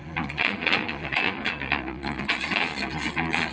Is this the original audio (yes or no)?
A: no